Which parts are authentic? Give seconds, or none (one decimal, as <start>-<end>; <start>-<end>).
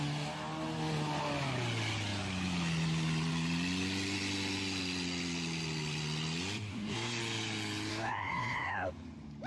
0.0-6.7; 7.2-7.9; 8.9-9.5